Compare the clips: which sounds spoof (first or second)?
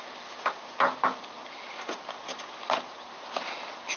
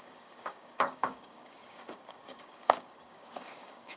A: second